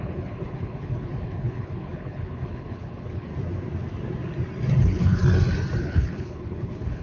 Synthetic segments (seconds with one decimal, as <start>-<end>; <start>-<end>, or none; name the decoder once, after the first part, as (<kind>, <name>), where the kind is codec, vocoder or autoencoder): 0.0-3.3 (codec, HILCodec); 4.8-5.2; 5.8-7.0